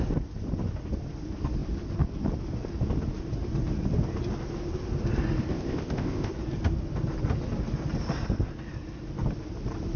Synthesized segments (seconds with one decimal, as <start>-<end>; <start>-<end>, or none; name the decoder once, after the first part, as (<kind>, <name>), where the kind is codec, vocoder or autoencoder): 5.5-6.3 (codec, ZipCodec)